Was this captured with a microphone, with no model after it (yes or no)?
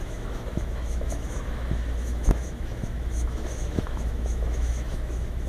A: no